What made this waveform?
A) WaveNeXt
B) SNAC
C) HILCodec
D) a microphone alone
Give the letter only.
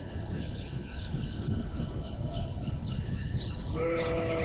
C